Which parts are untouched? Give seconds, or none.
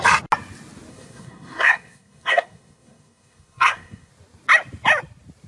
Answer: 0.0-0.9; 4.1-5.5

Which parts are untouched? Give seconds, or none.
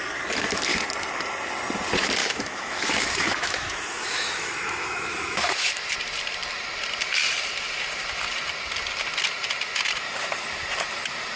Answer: 0.0-2.2; 5.9-11.4